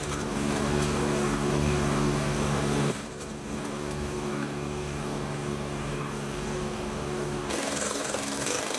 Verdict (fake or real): fake